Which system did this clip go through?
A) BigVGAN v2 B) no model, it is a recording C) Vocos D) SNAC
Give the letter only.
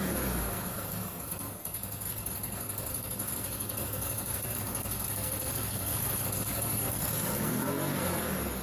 D